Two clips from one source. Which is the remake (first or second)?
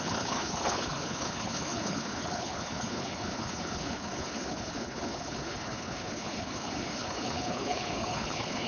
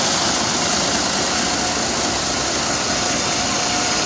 first